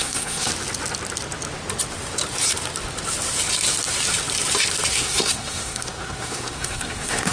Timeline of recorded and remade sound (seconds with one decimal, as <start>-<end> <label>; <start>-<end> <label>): 0.0-0.5 remade; 0.5-4.9 recorded; 4.9-7.3 remade